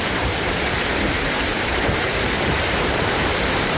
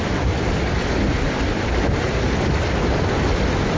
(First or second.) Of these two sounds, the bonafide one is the second